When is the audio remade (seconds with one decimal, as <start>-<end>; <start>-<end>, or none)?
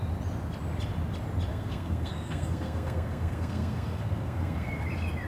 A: 1.5-4.7